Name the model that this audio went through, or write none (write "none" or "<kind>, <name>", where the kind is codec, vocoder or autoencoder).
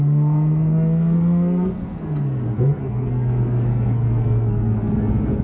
codec, SNAC